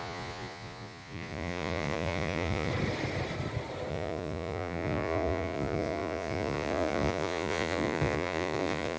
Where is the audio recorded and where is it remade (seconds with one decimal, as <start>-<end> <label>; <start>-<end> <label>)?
0.0-2.7 remade; 2.7-3.9 recorded; 3.9-9.0 remade